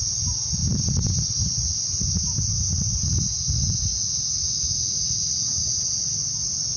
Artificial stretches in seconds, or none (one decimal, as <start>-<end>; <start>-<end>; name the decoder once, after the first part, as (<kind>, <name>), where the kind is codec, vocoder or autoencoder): 0.6-2.7 (vocoder, BigVGAN v2)